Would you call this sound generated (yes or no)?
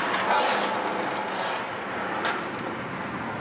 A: no